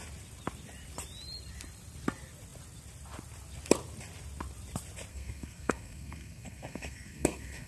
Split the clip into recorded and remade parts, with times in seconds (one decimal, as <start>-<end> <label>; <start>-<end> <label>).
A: 0.0-5.1 recorded; 5.1-7.7 remade